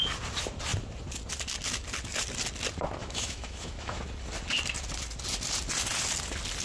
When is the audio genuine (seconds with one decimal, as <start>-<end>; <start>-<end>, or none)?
0.0-3.0; 4.0-6.6